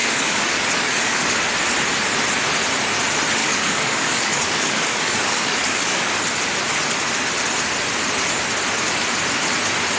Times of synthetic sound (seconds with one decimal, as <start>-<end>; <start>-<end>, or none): 0.0-1.4; 3.4-6.2